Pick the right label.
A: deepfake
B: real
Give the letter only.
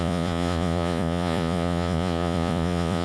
A